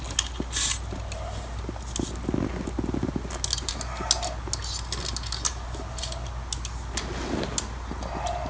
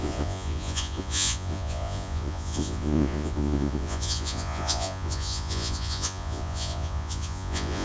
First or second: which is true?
first